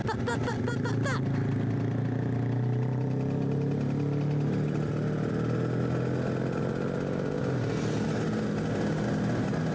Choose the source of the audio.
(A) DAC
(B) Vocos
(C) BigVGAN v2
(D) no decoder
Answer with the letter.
D